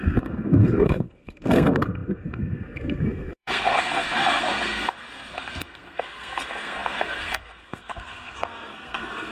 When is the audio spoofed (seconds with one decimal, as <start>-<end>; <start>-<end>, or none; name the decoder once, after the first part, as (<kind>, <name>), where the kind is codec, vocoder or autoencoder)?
0.0-9.3 (codec, SNAC)